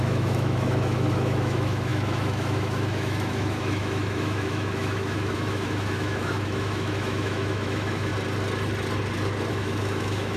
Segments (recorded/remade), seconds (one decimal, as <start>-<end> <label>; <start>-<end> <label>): 0.0-8.1 remade; 8.1-9.5 recorded; 9.5-10.4 remade

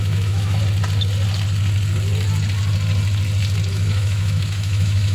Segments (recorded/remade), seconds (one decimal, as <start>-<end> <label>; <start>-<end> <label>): 0.0-0.6 remade; 0.6-3.7 recorded; 3.7-5.1 remade

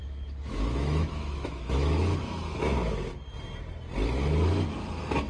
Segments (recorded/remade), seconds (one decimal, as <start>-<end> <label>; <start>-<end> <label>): 0.0-3.2 remade; 3.2-5.3 recorded

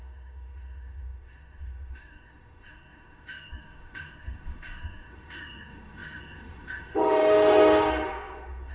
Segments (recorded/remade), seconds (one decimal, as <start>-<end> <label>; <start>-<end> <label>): 0.0-8.7 remade